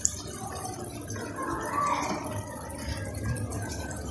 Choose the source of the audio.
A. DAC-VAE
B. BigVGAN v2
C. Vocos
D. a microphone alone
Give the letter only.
D